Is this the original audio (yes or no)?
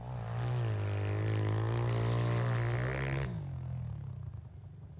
yes